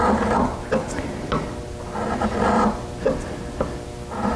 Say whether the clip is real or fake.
real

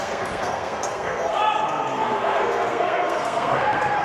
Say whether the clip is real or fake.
fake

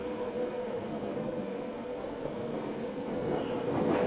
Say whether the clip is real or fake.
fake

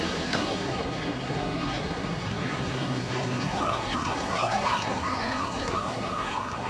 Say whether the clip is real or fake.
fake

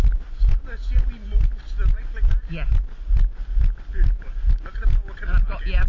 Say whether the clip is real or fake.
real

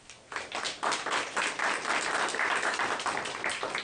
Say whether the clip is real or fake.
real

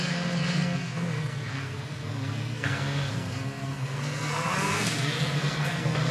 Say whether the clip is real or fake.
fake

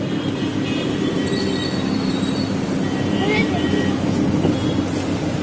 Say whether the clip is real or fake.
real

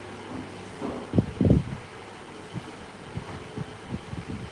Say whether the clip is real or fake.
real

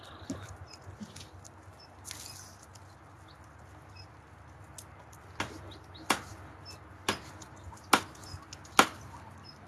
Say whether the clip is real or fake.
real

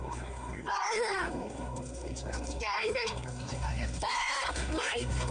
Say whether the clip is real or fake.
fake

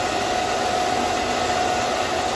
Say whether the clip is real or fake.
real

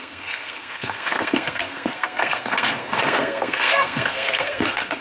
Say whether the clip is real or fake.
fake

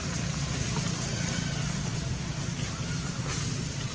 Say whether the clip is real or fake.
real